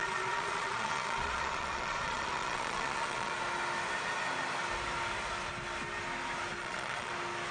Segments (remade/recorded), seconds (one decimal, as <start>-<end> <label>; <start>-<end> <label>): 0.0-3.3 remade; 3.3-6.6 recorded; 6.6-7.1 remade; 7.1-7.5 recorded